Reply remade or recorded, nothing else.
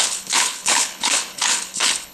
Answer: remade